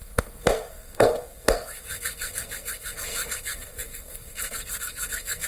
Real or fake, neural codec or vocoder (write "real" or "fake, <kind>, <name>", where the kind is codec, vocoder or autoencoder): fake, codec, SNAC